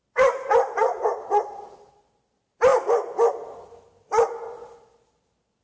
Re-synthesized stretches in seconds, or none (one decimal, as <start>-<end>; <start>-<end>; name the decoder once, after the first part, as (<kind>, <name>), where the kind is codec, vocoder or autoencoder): none